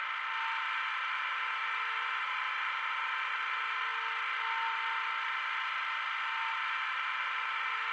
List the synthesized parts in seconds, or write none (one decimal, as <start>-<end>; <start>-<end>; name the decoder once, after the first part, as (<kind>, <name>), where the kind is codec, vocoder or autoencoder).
none